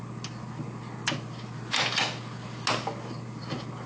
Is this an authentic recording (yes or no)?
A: yes